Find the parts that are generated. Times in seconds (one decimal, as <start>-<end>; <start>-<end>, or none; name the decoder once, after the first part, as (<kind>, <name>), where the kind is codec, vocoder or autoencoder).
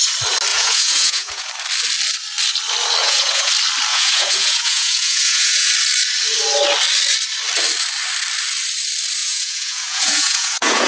0.5-1.5 (vocoder, Vocos); 3.0-3.5; 3.9-5.7; 9.2-10.9